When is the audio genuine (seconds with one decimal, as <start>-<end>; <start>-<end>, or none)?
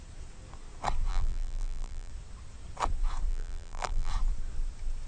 0.0-1.1; 2.1-3.3; 4.1-5.1